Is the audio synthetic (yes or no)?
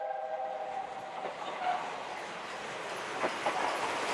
no